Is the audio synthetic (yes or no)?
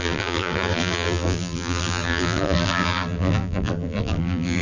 yes